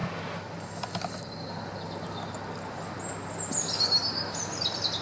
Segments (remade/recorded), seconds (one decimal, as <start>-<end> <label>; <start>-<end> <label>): 0.0-5.0 recorded

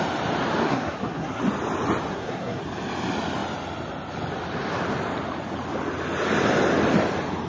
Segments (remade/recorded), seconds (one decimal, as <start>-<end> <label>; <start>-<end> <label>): 0.0-0.6 recorded; 0.6-1.4 remade; 1.4-2.1 recorded; 2.1-2.6 remade; 2.6-7.5 recorded

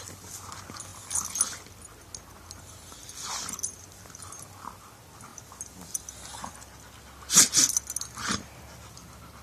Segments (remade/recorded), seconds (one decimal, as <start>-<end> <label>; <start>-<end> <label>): 0.0-9.4 recorded

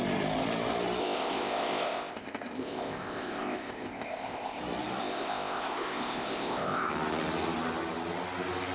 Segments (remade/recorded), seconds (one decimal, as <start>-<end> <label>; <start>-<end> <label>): 0.0-1.0 recorded; 1.0-4.6 remade; 4.6-5.0 recorded; 5.0-6.9 remade; 6.9-8.7 recorded

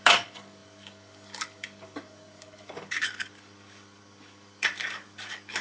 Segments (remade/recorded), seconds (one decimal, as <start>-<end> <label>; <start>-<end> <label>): 0.0-5.6 remade

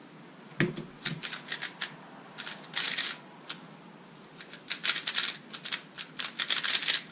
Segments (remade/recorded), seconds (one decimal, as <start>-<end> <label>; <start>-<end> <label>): 0.0-7.1 recorded

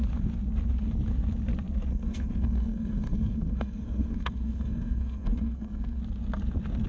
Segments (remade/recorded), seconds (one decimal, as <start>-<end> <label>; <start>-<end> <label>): 0.0-1.9 recorded; 1.9-6.0 remade; 6.0-6.9 recorded